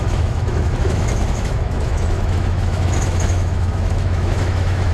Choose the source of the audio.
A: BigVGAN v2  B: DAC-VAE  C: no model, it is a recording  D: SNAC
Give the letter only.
B